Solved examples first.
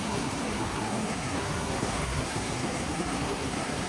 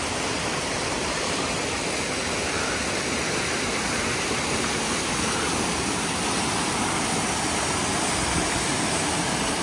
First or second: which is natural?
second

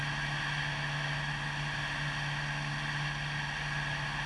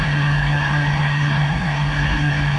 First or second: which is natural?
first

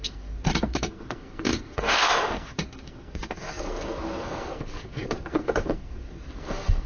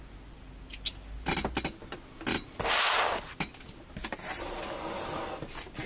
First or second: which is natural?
second